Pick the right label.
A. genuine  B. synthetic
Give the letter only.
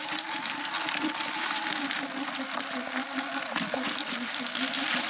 A